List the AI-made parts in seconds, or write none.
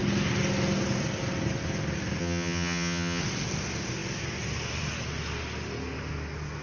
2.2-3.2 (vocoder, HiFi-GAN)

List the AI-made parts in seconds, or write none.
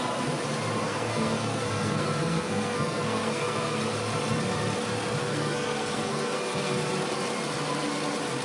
0.8-3.8 (codec, SNAC); 5.2-6.9